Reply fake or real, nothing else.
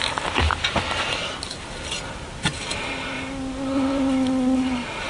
real